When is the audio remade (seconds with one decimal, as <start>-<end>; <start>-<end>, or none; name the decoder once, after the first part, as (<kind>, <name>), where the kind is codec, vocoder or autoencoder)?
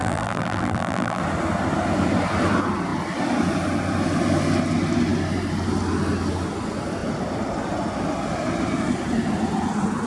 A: 0.0-1.2 (vocoder, BigVGAN v2)